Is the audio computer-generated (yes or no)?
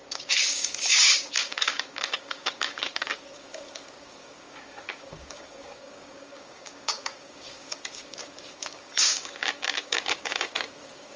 yes